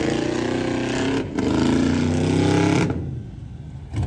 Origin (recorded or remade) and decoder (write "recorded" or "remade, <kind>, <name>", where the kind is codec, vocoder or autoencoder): recorded